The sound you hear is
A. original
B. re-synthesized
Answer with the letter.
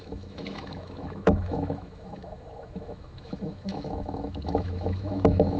B